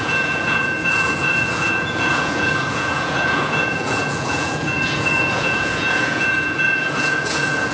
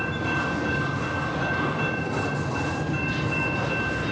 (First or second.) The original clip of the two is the second